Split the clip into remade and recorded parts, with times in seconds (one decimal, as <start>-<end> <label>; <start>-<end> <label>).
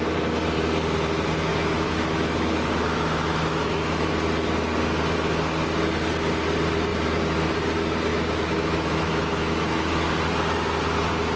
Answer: 0.0-1.5 recorded; 1.5-4.1 remade; 4.1-8.1 recorded; 8.1-10.0 remade; 10.0-11.4 recorded